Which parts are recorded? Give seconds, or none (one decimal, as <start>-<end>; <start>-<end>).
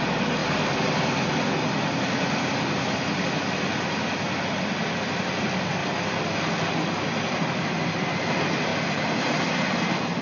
0.0-10.2